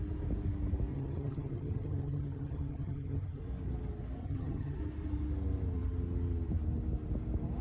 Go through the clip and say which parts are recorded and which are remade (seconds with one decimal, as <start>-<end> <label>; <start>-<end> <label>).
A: 0.0-0.9 recorded; 0.9-3.4 remade; 3.4-4.2 recorded; 4.2-4.8 remade; 4.8-7.6 recorded